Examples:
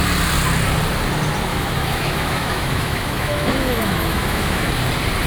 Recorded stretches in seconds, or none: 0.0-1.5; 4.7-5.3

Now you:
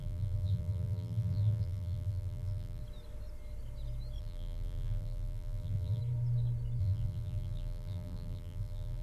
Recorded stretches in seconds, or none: 2.8-4.2; 6.0-6.8

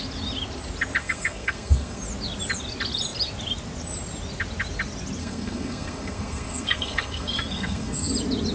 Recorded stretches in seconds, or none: 0.0-1.0; 2.0-5.2; 8.1-8.5